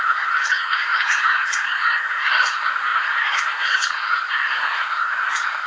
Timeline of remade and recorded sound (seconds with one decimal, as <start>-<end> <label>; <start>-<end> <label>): 0.0-5.7 remade

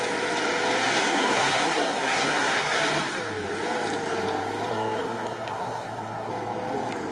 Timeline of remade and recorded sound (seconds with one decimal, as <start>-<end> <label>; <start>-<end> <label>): 0.0-1.0 recorded; 1.0-2.8 remade; 2.8-4.7 recorded; 4.7-6.3 remade; 6.3-7.1 recorded

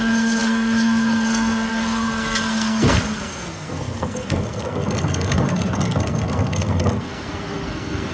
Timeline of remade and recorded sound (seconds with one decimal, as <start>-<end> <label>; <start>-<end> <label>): 0.0-8.1 remade